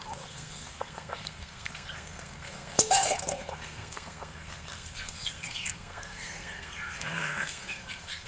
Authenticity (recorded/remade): remade